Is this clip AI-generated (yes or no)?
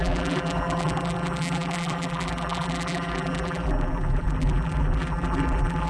yes